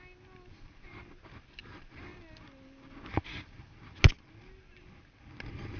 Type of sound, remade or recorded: recorded